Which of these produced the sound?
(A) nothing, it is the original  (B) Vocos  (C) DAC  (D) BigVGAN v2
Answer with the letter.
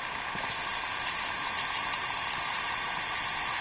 A